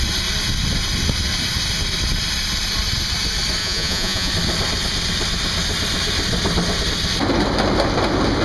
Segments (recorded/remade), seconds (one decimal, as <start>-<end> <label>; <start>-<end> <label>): 0.0-3.6 recorded; 3.6-4.3 remade; 4.3-8.4 recorded